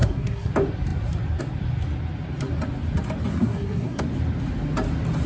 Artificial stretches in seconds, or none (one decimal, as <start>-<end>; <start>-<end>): 0.0-0.5; 3.3-4.0